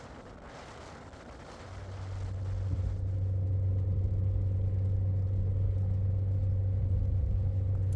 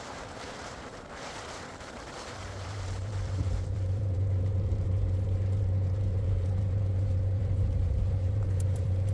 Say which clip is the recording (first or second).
first